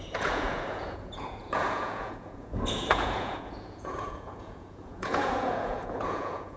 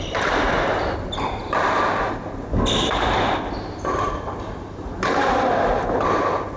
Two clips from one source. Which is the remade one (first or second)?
first